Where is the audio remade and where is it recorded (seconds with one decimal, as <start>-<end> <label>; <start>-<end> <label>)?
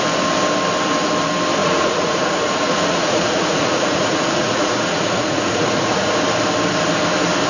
0.0-1.6 recorded; 1.6-6.1 remade; 6.1-7.5 recorded